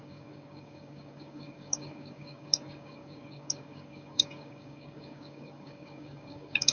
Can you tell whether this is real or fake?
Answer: fake